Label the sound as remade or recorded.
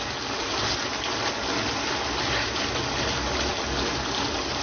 recorded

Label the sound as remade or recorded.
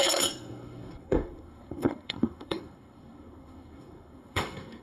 remade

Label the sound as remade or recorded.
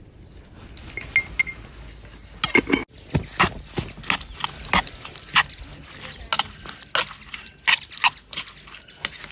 recorded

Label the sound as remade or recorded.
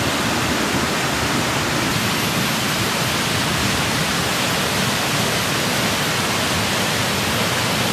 recorded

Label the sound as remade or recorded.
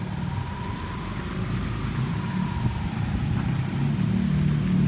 recorded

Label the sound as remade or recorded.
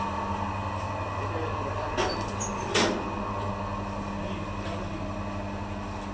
recorded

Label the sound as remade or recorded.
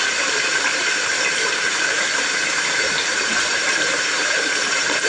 remade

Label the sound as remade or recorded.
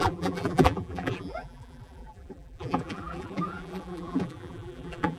remade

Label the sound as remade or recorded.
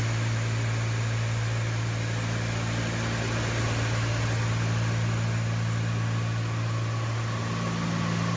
recorded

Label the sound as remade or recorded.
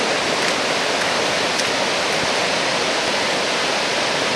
recorded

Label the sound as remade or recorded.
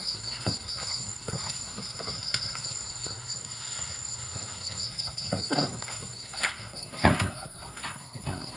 remade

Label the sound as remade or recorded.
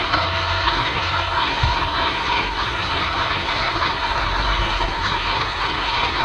remade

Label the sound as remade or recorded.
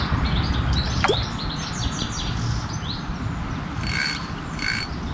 recorded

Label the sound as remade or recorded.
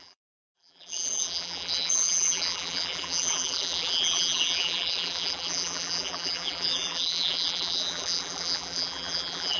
remade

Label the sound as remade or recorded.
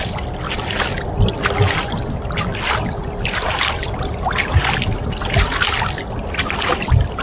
recorded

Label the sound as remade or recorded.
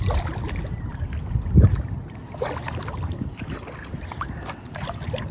recorded